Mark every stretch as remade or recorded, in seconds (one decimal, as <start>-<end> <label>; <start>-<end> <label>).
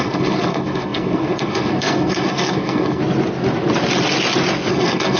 0.0-3.0 remade; 3.0-4.7 recorded; 4.7-5.2 remade